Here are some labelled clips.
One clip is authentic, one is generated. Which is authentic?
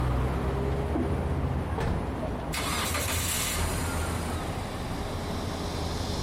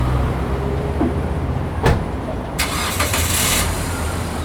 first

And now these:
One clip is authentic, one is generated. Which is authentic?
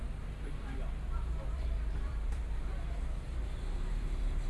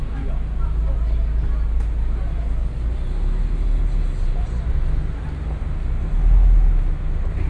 second